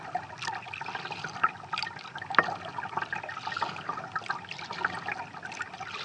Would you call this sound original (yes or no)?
yes